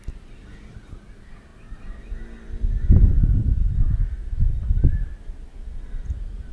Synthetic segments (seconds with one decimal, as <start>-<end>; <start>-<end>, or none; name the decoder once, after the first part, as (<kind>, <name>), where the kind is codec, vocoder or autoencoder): none